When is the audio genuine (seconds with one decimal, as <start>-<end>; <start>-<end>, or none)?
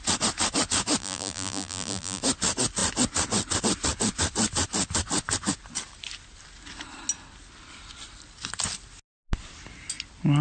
0.0-1.0; 2.2-10.4